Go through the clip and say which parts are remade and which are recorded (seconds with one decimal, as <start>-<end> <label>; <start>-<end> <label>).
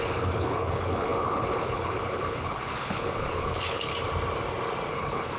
0.0-3.9 remade; 3.9-4.9 recorded; 4.9-5.4 remade